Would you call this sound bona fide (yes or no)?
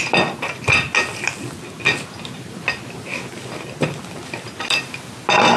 yes